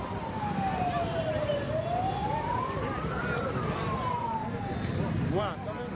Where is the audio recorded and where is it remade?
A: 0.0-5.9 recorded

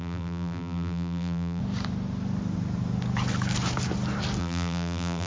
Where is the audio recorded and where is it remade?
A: 0.0-1.6 remade; 1.6-4.4 recorded; 4.4-5.3 remade